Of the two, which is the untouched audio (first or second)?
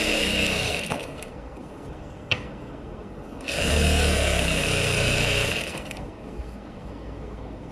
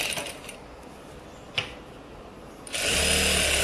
second